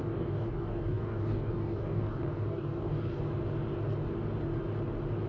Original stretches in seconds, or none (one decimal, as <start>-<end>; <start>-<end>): 3.2-5.3